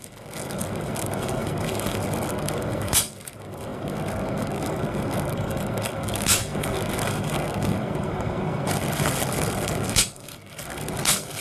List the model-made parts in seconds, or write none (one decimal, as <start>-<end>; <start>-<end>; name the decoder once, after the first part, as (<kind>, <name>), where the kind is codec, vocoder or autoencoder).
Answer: 0.0-11.4 (codec, SNAC)

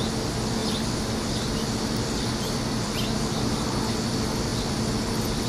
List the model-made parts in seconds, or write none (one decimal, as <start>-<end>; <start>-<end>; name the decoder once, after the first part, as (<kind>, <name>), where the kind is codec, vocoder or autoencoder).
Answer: none

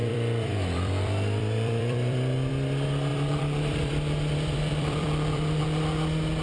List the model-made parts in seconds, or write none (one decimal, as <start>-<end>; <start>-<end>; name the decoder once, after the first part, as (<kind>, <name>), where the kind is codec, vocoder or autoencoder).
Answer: 0.0-2.5 (vocoder, BigVGAN v2); 3.1-5.6

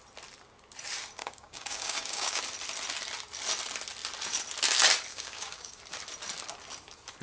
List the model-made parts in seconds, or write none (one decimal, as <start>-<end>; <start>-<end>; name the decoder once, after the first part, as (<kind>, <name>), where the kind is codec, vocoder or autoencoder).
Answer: 1.2-2.4 (codec, DAC); 5.1-5.8

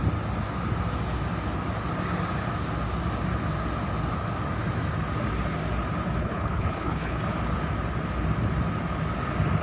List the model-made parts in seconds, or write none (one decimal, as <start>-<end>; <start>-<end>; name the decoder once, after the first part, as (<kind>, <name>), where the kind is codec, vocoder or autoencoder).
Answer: 6.2-7.2 (codec, HILCodec)

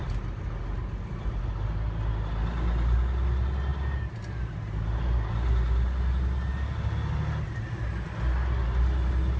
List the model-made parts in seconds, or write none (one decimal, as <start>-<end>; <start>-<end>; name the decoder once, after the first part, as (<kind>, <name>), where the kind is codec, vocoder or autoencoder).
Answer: none

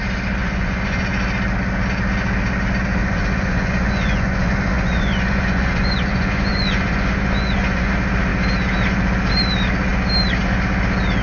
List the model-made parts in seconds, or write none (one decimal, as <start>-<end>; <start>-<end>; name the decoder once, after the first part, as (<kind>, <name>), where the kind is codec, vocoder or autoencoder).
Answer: 0.4-1.0 (vocoder, Vocos); 3.0-7.9